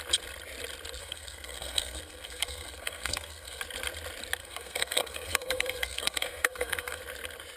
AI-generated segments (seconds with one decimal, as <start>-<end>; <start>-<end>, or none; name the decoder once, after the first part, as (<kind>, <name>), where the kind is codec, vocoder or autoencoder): 1.0-3.6 (codec, SNAC); 4.4-7.0